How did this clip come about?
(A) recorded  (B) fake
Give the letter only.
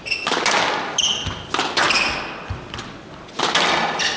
A